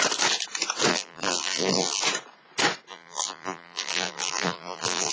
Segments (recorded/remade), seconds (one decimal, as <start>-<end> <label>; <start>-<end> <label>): 0.0-0.9 recorded; 0.9-2.0 remade; 2.0-2.9 recorded; 2.9-5.1 remade